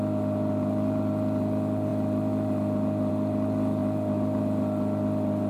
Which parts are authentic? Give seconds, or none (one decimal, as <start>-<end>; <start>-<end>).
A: 0.0-5.5